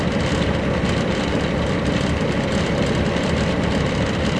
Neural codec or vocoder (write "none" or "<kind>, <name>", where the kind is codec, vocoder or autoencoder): vocoder, BigVGAN v2